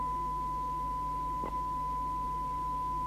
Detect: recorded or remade recorded